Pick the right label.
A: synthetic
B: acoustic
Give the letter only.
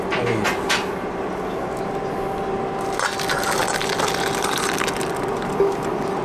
B